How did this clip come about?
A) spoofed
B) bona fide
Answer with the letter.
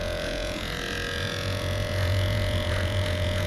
A